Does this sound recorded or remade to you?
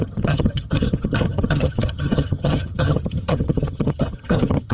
remade